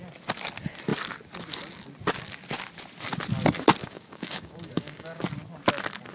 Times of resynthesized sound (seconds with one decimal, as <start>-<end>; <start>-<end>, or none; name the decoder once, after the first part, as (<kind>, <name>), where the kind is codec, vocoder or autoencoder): 3.8-5.2 (codec, DAC)